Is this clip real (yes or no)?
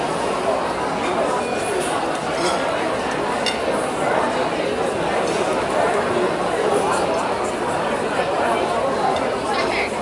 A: yes